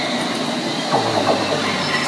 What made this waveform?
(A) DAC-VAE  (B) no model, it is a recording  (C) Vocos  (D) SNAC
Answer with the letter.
B